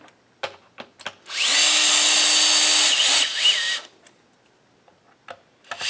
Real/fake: real